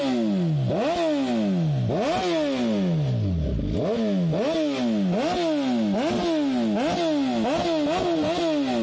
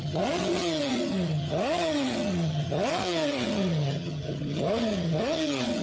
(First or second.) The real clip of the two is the first